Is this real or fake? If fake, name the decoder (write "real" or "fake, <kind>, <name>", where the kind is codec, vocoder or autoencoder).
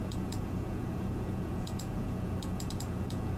fake, vocoder, Vocos